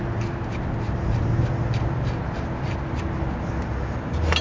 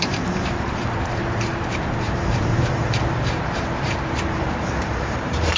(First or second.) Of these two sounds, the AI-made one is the second